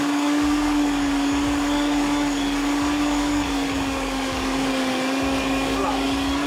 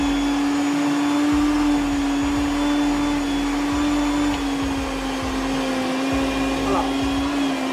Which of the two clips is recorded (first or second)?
second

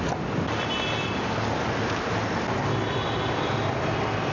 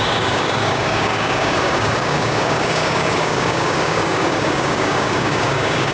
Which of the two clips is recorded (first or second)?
first